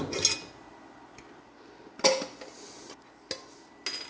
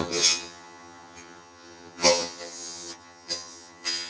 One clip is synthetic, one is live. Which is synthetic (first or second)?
second